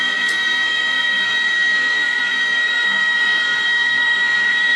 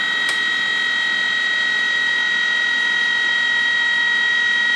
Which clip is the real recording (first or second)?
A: second